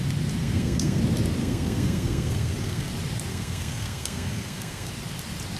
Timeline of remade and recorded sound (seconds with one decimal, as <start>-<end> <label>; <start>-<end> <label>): 0.0-0.4 recorded; 0.4-1.0 remade; 1.0-1.4 recorded; 1.4-2.9 remade; 2.9-3.3 recorded; 3.3-4.9 remade; 4.9-5.6 recorded